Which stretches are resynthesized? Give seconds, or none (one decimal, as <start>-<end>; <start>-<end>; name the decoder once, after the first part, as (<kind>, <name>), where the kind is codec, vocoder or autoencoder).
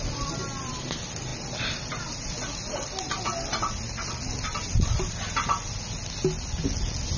none